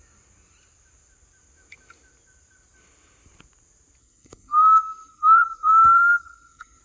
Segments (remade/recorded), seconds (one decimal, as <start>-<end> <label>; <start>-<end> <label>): 0.0-4.0 recorded; 4.0-6.8 remade